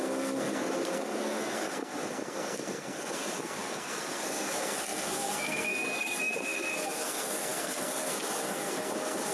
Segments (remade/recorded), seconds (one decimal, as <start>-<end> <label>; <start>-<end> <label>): 0.0-9.3 remade